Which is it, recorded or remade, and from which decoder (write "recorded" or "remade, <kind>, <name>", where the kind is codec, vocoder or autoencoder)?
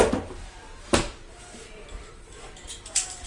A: remade, vocoder, BigVGAN v2